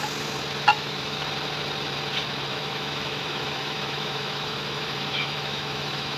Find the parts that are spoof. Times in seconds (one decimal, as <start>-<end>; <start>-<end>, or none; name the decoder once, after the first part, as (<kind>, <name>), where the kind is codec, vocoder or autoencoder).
0.7-1.2 (autoencoder, DAC-VAE); 2.5-6.2

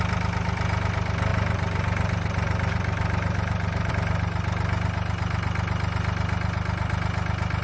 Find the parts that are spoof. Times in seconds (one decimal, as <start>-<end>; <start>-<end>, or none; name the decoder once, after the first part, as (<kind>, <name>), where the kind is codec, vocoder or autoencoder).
1.3-3.9 (vocoder, BigVGAN v2)

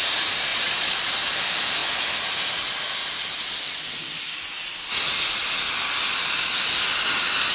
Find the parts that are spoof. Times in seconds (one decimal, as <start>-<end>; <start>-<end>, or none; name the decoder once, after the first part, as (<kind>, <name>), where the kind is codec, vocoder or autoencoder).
0.5-1.1 (vocoder, Vocos)

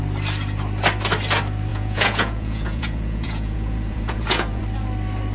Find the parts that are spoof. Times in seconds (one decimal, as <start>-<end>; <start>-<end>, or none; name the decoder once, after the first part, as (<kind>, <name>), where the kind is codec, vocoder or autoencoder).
1.7-4.6 (vocoder, Vocos)